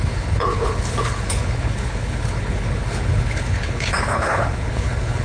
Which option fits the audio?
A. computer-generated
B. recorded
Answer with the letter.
A